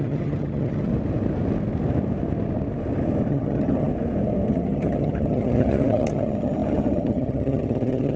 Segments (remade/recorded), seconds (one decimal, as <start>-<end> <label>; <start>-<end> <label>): 0.0-0.9 remade; 0.9-3.3 recorded; 3.3-3.9 remade; 3.9-4.5 recorded; 4.5-8.2 remade